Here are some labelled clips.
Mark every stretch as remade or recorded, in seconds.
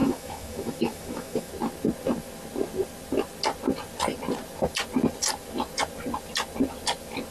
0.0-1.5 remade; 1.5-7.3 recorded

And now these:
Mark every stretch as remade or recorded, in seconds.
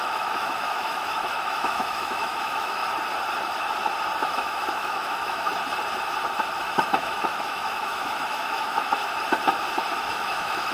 0.0-2.8 remade; 2.8-4.2 recorded; 4.2-5.5 remade; 5.5-6.6 recorded; 6.6-9.0 remade; 9.0-9.9 recorded; 9.9-10.7 remade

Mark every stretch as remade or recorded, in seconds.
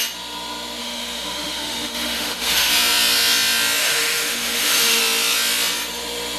0.0-0.8 recorded; 0.8-2.7 remade; 2.7-3.8 recorded; 3.8-5.0 remade; 5.0-6.4 recorded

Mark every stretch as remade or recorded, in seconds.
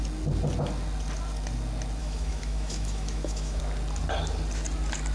0.0-2.0 recorded; 2.0-3.6 remade; 3.6-5.1 recorded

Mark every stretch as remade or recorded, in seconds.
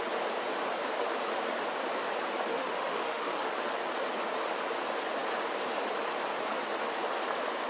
0.0-2.5 recorded; 2.5-3.5 remade; 3.5-7.7 recorded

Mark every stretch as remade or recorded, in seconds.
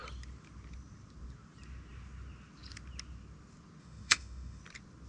0.0-3.8 recorded; 3.8-4.6 remade; 4.6-5.1 recorded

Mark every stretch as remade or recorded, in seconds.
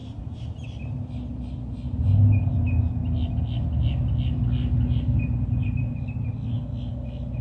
0.0-7.4 recorded